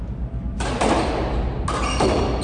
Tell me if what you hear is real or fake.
real